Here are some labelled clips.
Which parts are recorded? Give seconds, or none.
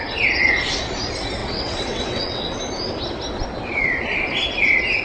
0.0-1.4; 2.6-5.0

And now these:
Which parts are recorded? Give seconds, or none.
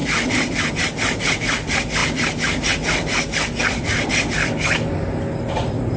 0.0-6.0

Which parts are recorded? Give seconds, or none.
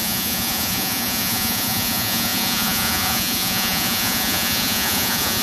none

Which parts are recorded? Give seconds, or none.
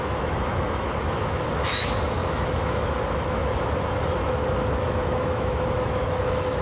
none